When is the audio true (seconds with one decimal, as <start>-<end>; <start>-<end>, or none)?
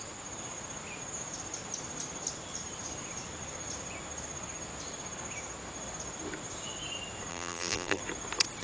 0.0-7.3; 8.0-8.6